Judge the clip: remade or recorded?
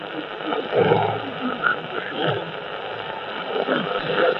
recorded